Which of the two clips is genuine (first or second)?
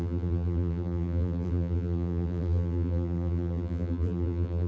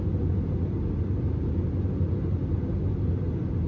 second